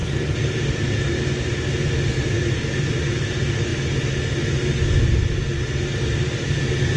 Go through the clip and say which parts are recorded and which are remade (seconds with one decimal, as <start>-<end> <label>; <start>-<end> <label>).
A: 0.0-0.7 remade; 0.7-2.1 recorded; 2.1-2.9 remade; 2.9-7.0 recorded